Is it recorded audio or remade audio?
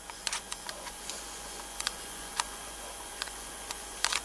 remade